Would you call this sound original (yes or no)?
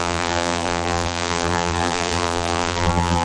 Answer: no